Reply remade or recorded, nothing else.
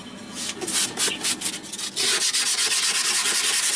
recorded